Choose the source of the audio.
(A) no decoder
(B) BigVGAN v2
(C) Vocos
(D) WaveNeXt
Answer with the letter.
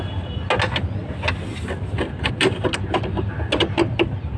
A